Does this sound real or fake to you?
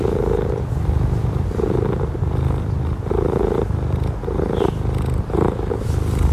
real